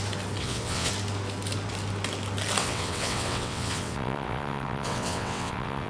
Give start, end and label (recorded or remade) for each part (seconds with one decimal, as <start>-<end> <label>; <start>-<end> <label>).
0.0-0.4 recorded; 0.4-0.9 remade; 0.9-2.6 recorded; 2.6-5.9 remade